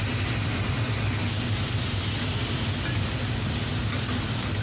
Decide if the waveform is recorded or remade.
recorded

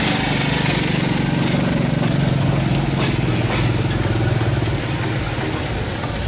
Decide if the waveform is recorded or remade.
recorded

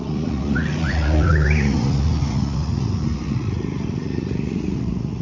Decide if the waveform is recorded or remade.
remade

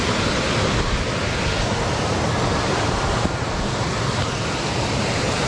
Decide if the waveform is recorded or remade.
recorded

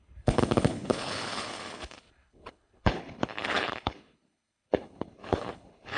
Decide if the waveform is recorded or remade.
remade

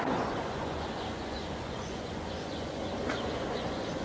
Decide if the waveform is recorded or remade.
remade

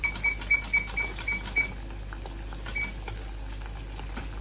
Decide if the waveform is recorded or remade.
recorded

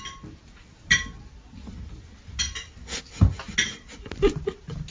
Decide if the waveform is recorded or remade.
recorded